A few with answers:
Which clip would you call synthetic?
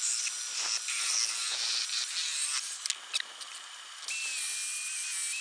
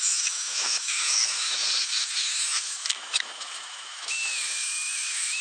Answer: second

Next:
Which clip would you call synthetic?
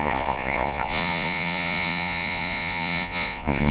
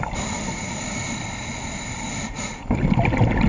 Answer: first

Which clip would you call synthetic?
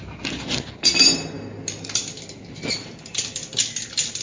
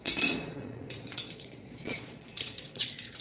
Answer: second